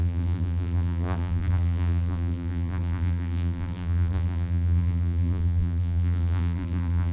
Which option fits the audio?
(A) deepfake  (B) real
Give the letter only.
A